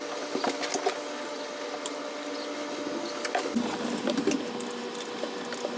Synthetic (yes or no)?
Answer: no